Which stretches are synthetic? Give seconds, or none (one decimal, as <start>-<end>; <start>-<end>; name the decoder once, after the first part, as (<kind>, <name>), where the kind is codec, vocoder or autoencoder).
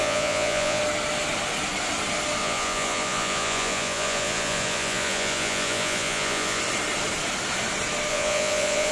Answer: 0.0-0.8 (vocoder, Vocos); 2.4-6.6; 8.1-8.9